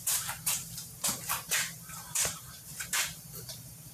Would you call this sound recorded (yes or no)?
no